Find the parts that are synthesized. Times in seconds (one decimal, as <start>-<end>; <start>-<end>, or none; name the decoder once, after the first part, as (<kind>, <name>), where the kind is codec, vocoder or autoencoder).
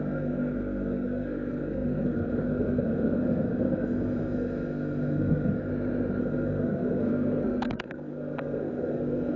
0.0-5.7 (codec, SNAC); 6.2-9.4